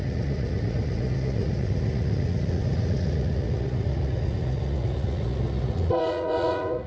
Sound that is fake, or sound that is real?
fake